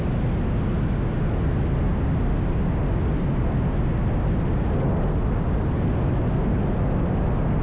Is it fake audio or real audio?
real